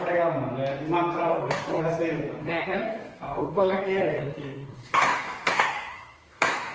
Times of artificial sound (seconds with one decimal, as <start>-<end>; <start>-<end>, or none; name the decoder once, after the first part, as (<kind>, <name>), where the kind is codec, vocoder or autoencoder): 1.3-1.8 (codec, SNAC); 2.4-6.7